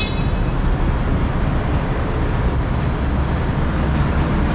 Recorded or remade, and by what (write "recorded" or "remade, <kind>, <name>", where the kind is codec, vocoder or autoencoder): recorded